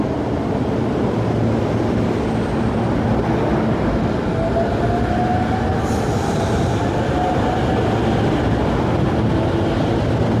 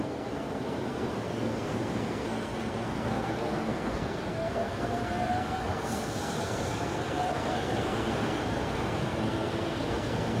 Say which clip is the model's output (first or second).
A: second